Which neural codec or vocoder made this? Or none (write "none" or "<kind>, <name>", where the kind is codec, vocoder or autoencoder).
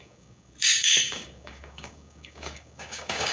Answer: codec, DAC